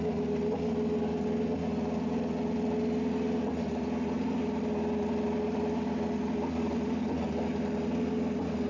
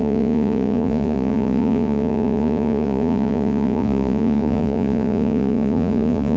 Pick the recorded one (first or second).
first